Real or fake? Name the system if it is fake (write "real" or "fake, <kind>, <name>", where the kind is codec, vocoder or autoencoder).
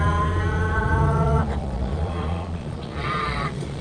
fake, vocoder, Vocos